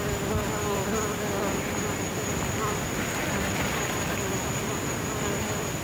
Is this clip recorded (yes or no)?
yes